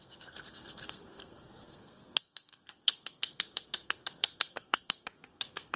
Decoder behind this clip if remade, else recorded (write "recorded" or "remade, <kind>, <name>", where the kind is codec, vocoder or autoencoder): remade, codec, SNAC